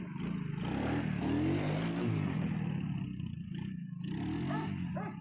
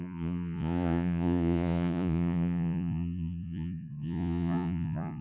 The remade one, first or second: second